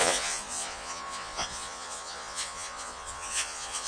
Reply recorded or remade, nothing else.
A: remade